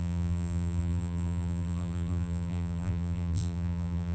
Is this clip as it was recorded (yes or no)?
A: no